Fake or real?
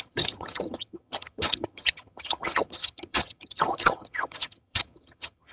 fake